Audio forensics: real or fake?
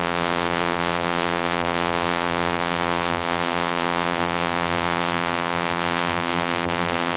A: fake